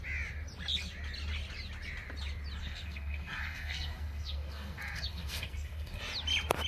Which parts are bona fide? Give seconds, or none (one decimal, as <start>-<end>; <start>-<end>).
0.0-2.6; 6.0-6.7